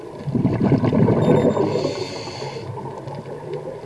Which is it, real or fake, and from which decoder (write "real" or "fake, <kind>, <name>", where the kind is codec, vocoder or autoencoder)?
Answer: real